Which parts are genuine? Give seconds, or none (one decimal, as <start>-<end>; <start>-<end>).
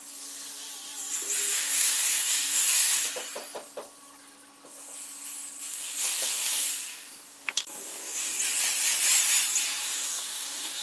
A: 0.0-1.5; 3.1-5.7; 8.4-9.8